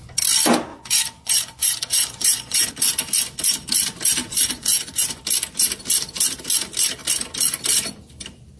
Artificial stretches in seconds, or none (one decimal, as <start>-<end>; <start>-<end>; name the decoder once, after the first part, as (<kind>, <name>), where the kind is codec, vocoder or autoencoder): 0.7-2.7 (vocoder, Vocos); 4.2-5.2